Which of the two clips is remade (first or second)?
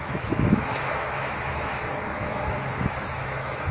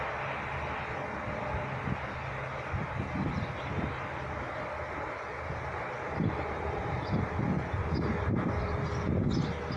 first